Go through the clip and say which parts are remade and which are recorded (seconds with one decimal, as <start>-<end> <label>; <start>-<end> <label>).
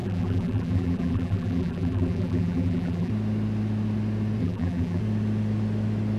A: 0.0-3.1 remade; 3.1-4.4 recorded; 4.4-5.0 remade; 5.0-6.2 recorded